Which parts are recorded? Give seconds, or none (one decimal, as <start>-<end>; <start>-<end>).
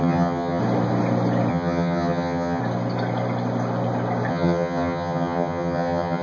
0.6-1.5; 2.6-4.3